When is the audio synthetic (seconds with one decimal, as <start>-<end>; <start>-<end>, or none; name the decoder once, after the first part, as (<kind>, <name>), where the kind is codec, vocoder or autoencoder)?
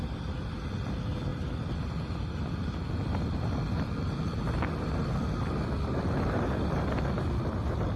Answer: none